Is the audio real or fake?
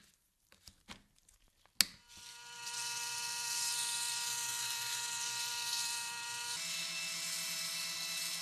real